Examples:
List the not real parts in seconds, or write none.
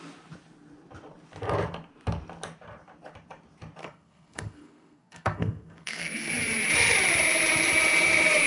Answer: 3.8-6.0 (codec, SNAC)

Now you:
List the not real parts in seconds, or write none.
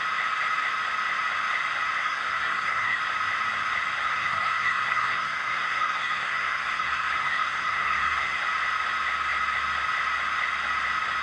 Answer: 2.0-3.0 (codec, SNAC); 4.0-8.4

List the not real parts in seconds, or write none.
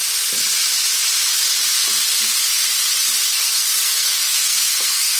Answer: 3.3-5.2 (codec, SNAC)